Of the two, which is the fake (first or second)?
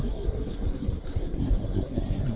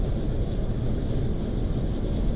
first